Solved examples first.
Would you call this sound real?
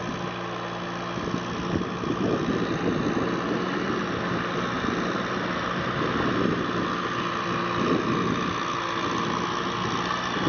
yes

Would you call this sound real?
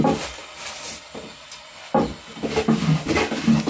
yes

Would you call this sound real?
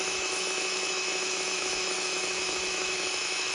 no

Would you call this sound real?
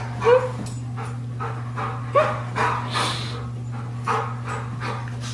yes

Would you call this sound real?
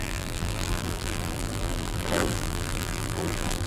no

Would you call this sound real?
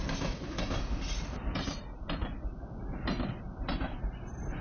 yes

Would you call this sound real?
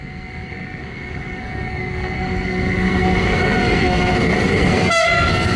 no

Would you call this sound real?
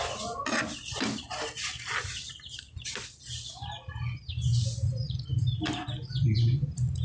yes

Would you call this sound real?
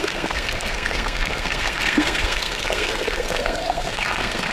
no